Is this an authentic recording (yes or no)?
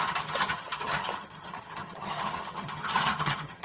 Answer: no